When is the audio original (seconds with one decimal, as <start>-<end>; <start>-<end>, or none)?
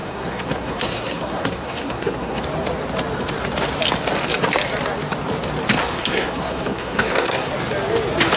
2.4-5.9; 7.5-8.4